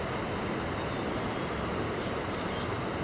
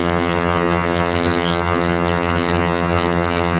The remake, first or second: second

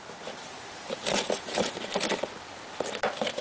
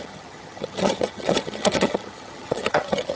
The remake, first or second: second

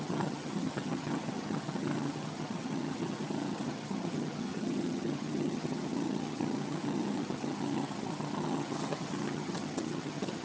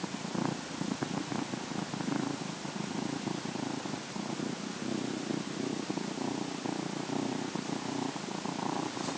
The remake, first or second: first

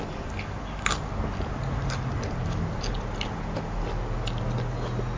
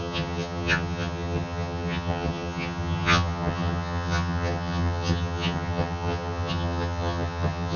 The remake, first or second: second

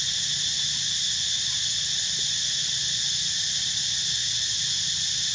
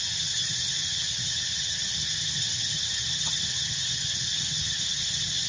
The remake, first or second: second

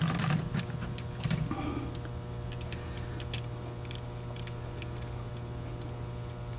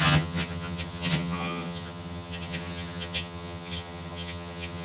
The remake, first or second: second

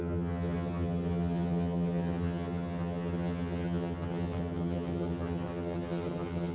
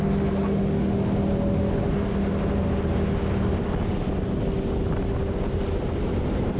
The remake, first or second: first